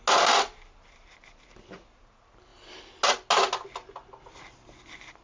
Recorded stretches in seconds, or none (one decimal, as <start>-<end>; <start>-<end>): 0.0-5.2